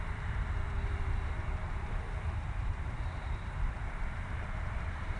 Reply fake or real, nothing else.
fake